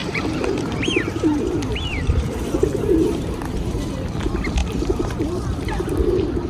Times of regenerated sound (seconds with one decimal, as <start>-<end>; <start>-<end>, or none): 0.0-3.9; 4.6-5.4